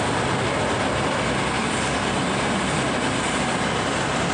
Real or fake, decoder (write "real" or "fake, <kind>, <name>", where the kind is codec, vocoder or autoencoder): real